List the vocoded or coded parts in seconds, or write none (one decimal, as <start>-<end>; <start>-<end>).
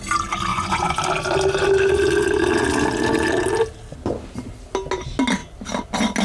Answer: 0.5-1.0